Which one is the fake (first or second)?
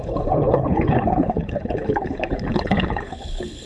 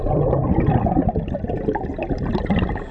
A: first